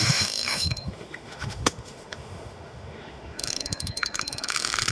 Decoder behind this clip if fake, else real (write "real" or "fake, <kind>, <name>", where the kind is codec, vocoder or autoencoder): fake, autoencoder, DAC-VAE